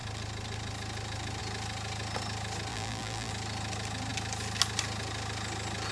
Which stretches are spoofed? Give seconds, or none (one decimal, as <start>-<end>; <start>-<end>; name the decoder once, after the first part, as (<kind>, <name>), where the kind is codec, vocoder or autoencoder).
2.7-3.3 (vocoder, BigVGAN v2)

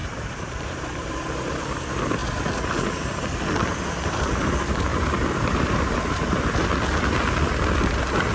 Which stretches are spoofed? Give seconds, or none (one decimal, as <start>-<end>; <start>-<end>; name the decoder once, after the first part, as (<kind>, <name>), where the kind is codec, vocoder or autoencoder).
0.0-1.1 (vocoder, BigVGAN v2); 4.9-5.8

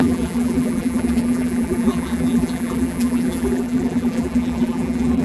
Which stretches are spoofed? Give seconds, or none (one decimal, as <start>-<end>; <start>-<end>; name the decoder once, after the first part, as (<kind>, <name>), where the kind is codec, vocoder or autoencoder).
0.0-5.2 (vocoder, BigVGAN v2)

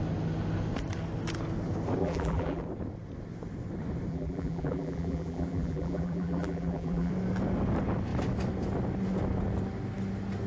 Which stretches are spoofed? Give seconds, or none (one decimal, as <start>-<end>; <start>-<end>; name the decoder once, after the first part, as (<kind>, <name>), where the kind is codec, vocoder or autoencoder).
2.0-2.6 (vocoder, BigVGAN v2); 4.1-7.1

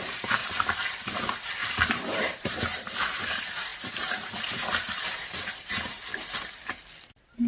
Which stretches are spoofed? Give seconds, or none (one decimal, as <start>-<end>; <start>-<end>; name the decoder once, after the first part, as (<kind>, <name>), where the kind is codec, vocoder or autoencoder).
0.0-0.4 (vocoder, BigVGAN v2); 1.9-6.1

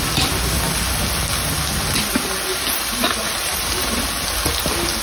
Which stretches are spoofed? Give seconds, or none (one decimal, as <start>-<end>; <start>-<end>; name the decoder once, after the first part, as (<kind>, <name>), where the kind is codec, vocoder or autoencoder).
2.5-4.0 (vocoder, BigVGAN v2)